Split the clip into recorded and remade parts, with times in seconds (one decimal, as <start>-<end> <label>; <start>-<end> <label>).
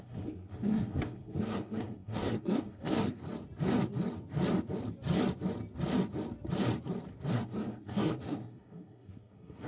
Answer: 0.0-3.2 remade; 3.2-7.3 recorded; 7.3-9.7 remade